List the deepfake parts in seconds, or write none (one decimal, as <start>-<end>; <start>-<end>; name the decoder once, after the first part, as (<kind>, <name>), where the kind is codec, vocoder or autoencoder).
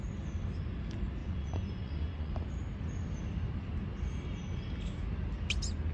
1.2-2.3 (vocoder, Vocos)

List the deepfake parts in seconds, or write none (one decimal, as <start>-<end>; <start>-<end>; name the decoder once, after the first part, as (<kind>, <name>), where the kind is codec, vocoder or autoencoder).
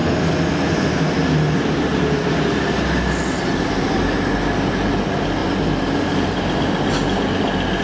none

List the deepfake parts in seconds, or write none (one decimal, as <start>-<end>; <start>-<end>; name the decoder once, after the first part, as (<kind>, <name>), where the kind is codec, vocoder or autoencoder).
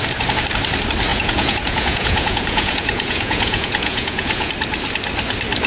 1.1-4.5 (vocoder, Vocos)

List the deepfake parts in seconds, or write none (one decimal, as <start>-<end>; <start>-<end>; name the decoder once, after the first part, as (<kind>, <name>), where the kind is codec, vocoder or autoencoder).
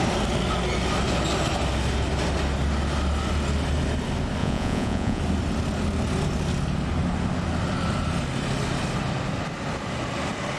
4.4-5.2 (vocoder, Vocos)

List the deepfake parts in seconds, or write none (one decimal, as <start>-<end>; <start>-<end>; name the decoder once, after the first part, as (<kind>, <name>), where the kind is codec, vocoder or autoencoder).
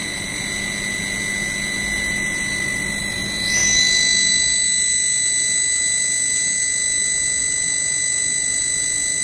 none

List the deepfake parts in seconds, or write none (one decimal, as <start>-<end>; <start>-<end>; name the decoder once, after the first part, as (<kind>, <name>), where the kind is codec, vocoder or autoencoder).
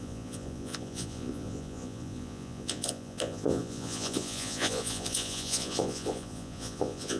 0.0-7.2 (vocoder, Vocos)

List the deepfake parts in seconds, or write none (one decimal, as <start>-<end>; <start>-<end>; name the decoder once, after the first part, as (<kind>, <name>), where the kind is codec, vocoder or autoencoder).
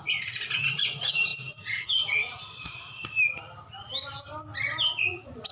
0.0-3.0 (vocoder, Vocos); 5.1-5.5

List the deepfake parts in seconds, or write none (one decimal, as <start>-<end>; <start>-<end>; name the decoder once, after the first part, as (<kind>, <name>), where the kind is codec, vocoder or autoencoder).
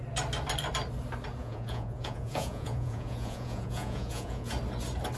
1.4-4.5 (vocoder, Vocos)